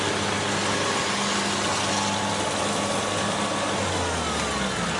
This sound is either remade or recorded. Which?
recorded